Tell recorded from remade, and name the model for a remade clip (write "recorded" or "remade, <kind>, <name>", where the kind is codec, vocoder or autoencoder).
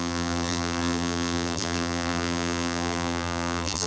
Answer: remade, vocoder, BigVGAN v2